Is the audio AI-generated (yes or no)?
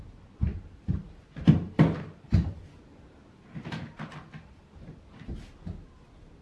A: no